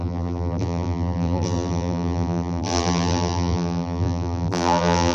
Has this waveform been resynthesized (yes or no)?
yes